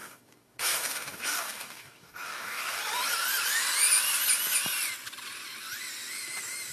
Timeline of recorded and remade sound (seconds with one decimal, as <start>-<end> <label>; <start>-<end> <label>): 0.0-2.8 remade; 2.8-6.7 recorded